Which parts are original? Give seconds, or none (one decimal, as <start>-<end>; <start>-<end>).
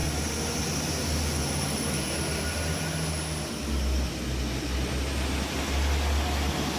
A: 0.0-6.8